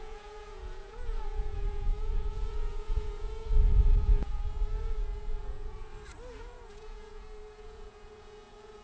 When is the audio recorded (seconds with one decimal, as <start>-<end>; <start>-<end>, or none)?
5.9-6.4